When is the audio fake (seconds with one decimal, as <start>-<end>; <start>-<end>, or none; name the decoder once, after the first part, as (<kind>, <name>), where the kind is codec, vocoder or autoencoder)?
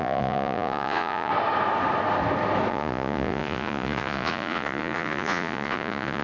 0.0-1.3 (vocoder, Vocos); 2.7-6.2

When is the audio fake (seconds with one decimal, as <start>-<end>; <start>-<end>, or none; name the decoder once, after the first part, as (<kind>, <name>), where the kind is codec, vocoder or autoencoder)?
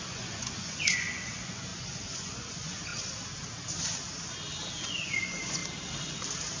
0.0-2.9 (vocoder, Vocos); 4.9-5.6